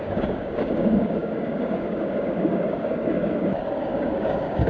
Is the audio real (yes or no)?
no